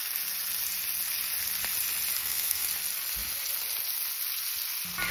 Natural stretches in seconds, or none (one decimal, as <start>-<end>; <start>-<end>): 0.0-2.2; 2.7-5.1